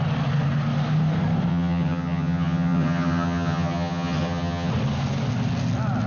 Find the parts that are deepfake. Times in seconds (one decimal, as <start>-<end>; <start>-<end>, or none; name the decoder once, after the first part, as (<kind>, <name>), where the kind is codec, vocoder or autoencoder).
1.5-4.7 (vocoder, HiFi-GAN)